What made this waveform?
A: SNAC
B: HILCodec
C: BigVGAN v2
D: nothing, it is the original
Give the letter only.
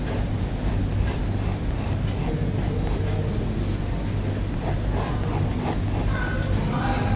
D